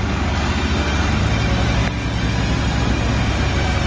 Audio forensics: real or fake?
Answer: real